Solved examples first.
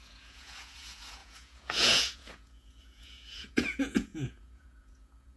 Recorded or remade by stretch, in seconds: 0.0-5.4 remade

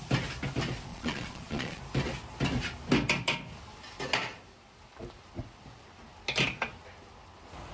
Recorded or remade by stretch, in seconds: 0.0-0.9 recorded; 0.9-1.8 remade; 1.8-7.7 recorded

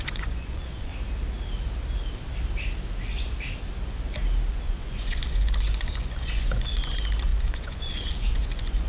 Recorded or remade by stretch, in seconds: 0.0-0.9 remade; 0.9-4.5 recorded; 4.5-8.9 remade

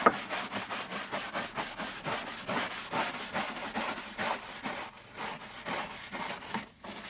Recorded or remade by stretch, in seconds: 0.0-7.1 recorded

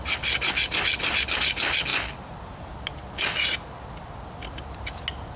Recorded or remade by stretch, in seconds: 0.0-5.4 recorded

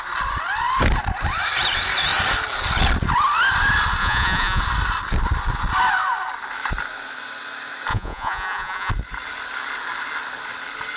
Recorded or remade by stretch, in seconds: 0.0-4.0 recorded; 4.0-4.6 remade; 4.6-7.9 recorded; 7.9-8.9 remade; 8.9-11.0 recorded

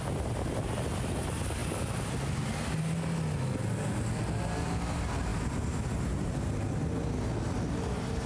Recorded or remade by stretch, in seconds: 0.0-8.3 recorded